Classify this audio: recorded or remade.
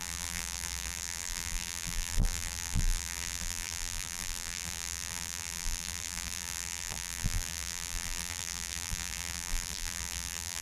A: remade